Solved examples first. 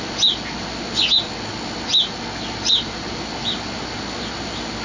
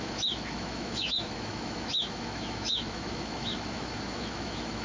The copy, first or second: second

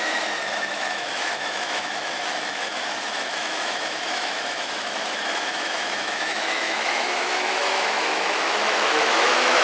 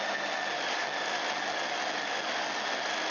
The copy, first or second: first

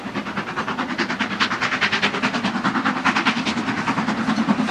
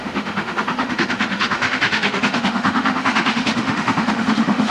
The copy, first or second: second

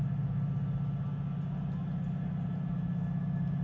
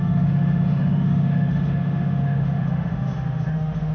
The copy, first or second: second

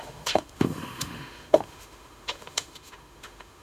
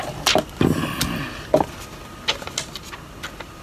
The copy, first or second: first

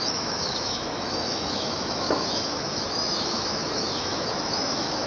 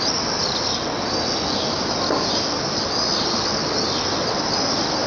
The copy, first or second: first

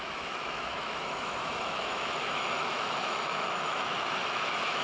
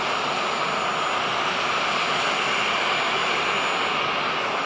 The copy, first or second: first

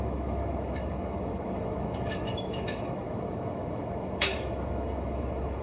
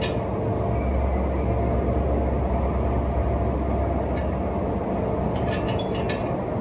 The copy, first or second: first